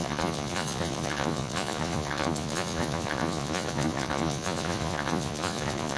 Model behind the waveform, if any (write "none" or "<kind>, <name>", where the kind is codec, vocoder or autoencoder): vocoder, Vocos